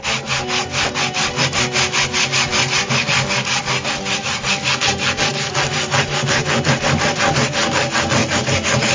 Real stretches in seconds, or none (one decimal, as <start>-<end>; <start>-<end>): 0.0-8.2